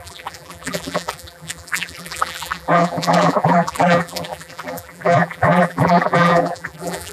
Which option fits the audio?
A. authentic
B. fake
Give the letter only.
B